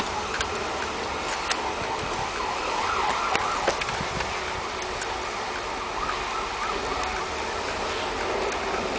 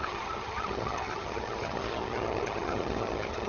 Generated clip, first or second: second